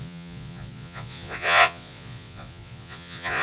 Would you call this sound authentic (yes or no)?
no